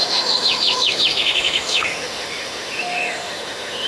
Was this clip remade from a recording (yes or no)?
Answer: yes